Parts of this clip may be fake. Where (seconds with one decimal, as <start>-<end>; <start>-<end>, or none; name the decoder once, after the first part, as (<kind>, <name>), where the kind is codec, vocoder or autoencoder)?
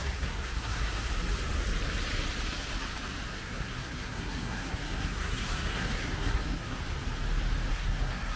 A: 0.0-1.1 (codec, SNAC); 3.3-6.8; 7.7-8.4